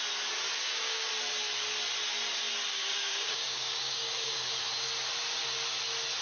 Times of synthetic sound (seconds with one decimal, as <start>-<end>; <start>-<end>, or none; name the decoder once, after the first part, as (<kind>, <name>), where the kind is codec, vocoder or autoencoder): 0.6-1.1 (codec, DAC); 2.7-4.6